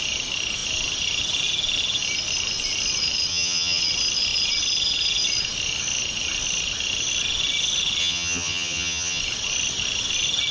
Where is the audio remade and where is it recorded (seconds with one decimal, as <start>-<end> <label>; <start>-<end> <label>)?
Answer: 0.0-3.3 recorded; 3.3-3.8 remade; 3.8-8.0 recorded; 8.0-9.2 remade; 9.2-10.5 recorded